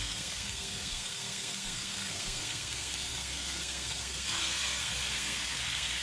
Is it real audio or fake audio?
fake